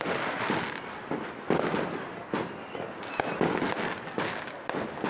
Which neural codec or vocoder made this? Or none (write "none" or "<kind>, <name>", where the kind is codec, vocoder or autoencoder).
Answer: none